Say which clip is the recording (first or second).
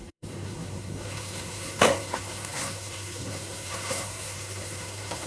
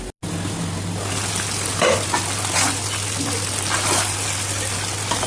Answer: second